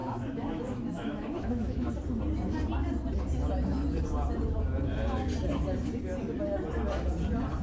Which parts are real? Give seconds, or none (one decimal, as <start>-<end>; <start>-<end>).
1.9-7.6